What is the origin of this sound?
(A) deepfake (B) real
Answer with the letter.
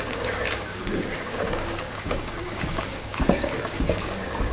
A